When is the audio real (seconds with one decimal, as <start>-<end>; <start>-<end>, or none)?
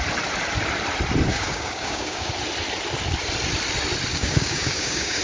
0.0-1.3; 2.3-4.1